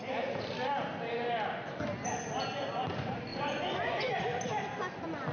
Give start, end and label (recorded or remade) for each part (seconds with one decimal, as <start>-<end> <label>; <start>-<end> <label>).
0.0-3.3 recorded; 3.3-4.2 remade; 4.2-5.3 recorded